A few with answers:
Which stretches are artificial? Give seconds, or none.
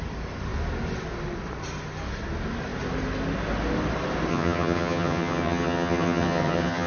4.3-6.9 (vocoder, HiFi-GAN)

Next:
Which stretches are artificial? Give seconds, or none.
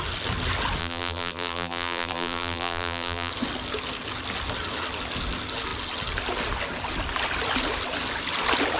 0.8-3.3 (vocoder, BigVGAN v2)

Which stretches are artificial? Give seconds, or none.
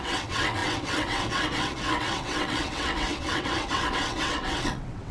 0.0-5.1 (vocoder, WaveNeXt)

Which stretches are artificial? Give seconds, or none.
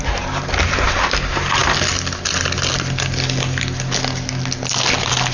none